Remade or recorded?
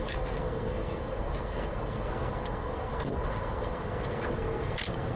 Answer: remade